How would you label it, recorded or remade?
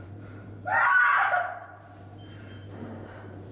remade